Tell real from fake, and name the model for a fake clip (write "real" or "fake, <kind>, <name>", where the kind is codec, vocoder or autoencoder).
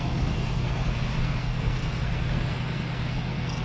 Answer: fake, codec, SNAC